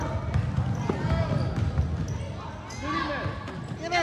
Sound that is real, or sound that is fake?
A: real